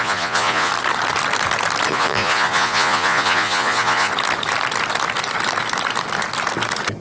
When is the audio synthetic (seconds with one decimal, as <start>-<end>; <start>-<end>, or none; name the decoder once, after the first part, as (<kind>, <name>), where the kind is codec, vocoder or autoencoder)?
0.0-0.7 (vocoder, Vocos); 1.9-4.1